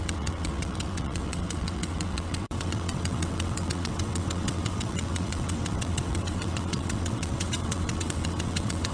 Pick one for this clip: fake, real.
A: fake